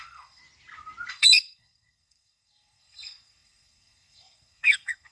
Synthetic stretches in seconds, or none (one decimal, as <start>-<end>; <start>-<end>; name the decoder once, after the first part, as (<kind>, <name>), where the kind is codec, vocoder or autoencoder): 0.0-0.4 (codec, SNAC); 1.1-5.1